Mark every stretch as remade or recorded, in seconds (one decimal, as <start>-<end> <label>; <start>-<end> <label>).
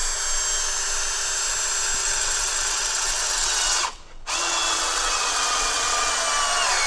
0.0-2.0 recorded; 2.0-6.1 remade; 6.1-6.9 recorded